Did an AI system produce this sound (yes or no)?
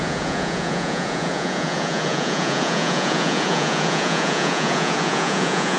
yes